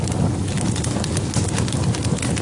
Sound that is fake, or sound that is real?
real